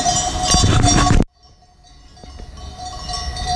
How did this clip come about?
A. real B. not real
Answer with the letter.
A